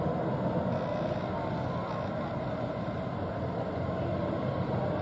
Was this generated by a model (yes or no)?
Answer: no